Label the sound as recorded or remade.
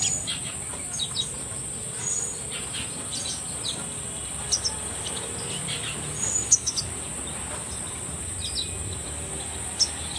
recorded